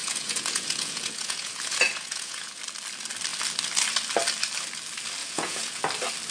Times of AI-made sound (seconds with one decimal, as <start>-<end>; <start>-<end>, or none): 0.0-2.6; 5.2-5.8